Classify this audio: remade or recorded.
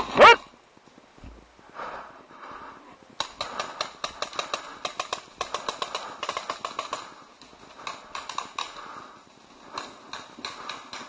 recorded